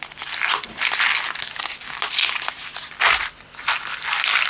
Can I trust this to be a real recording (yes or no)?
yes